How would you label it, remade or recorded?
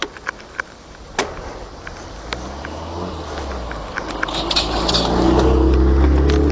recorded